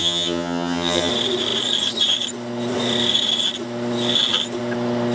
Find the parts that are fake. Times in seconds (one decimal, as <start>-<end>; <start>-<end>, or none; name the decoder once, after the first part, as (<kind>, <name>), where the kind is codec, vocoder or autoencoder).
0.0-1.1 (vocoder, HiFi-GAN)

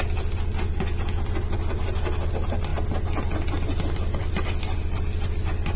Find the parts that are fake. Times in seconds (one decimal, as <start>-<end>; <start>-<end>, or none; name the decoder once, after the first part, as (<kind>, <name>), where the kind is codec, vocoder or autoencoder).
none

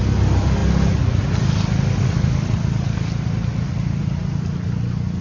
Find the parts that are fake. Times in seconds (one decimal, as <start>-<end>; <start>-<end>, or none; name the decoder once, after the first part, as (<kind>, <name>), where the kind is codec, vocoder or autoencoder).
none

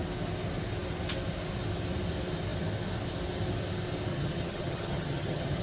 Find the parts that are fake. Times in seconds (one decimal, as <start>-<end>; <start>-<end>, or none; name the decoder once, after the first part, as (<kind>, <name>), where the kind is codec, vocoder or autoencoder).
4.1-5.6 (vocoder, HiFi-GAN)